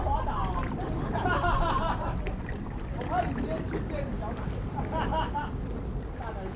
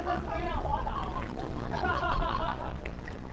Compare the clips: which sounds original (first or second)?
first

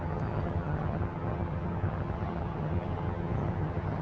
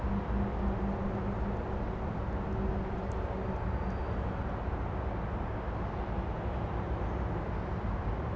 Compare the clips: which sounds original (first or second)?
second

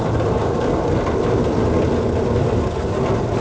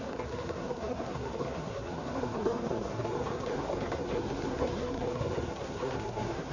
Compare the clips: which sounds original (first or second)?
first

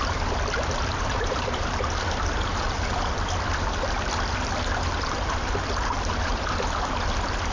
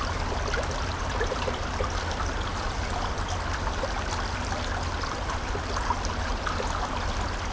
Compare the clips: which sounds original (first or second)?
second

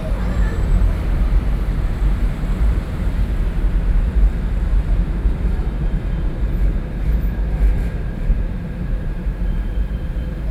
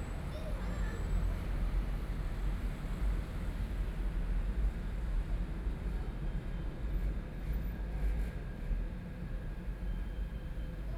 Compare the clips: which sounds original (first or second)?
second